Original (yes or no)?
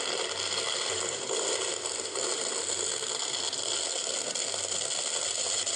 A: yes